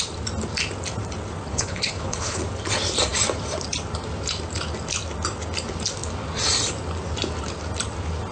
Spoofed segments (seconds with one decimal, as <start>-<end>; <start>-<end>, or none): 1.5-2.4